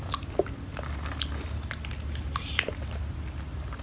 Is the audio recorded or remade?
recorded